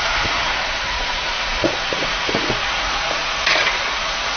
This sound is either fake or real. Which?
fake